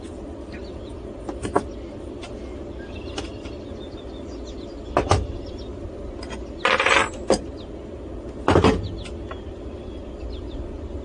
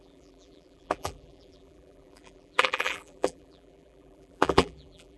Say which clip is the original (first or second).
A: first